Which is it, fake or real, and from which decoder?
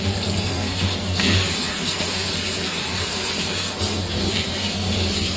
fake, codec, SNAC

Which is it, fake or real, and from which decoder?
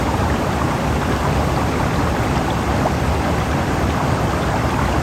real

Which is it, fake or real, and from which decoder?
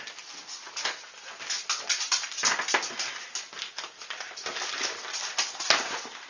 real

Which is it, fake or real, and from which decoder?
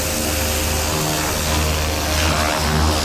real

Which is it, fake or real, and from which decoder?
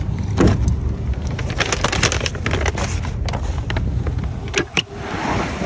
real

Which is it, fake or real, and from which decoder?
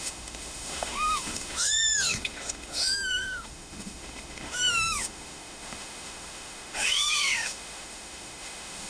fake, autoencoder, DAC-VAE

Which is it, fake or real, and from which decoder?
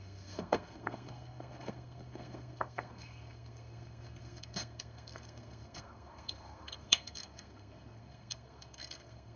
fake, codec, SNAC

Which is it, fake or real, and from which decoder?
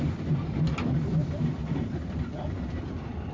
real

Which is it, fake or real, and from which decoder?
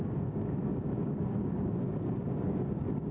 fake, codec, DAC